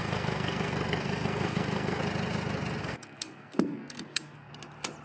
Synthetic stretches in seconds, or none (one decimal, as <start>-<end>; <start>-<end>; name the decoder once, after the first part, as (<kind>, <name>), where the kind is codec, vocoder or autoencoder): 0.0-2.0 (codec, SNAC); 2.8-4.5